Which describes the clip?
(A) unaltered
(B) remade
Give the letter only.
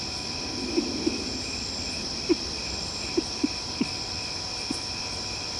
A